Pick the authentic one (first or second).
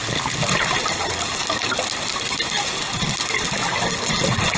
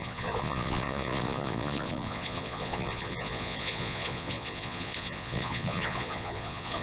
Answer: first